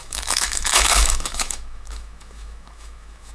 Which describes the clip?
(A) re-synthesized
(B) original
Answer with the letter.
A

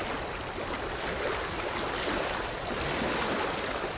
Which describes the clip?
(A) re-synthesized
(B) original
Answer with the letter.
B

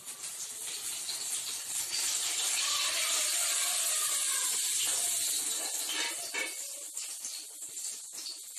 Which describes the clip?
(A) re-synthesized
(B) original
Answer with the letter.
B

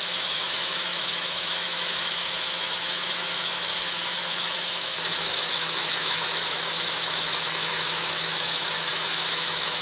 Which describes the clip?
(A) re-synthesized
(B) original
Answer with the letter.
A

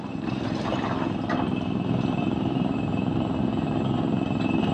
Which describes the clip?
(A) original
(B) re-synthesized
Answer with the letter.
B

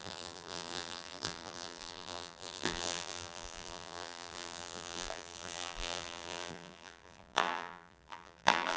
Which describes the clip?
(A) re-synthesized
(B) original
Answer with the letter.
A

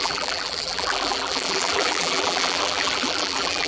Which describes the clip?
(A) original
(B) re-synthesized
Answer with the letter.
B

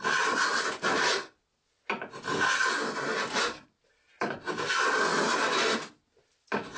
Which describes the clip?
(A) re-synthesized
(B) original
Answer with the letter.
B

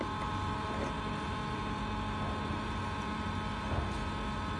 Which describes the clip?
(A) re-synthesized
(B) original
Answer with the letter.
B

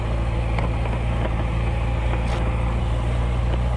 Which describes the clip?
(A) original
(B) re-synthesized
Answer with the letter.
A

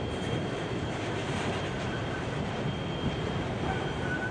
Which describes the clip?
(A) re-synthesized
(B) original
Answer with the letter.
A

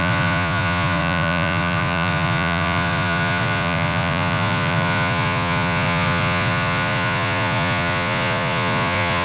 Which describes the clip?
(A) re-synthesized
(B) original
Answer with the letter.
A